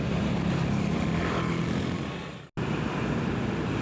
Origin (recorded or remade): recorded